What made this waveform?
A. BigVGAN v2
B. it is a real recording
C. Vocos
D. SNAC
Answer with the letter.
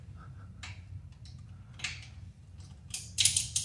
B